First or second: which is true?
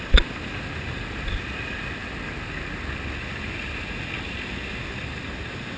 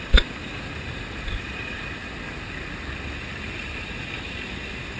first